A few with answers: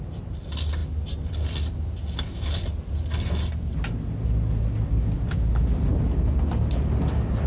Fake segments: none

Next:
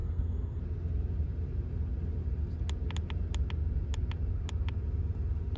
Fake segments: 0.0-0.6

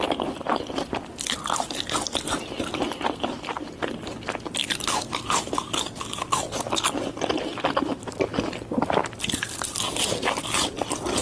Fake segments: none

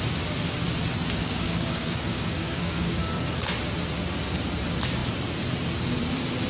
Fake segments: 1.2-3.5

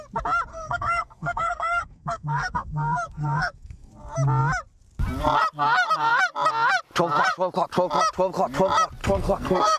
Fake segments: 0.5-3.9; 9.0-9.8

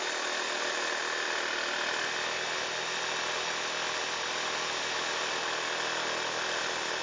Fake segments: none

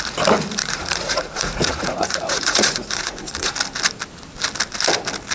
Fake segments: 0.6-3.5

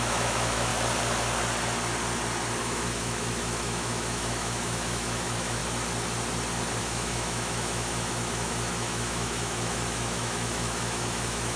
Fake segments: 0.0-0.7; 2.6-5.6; 6.8-11.6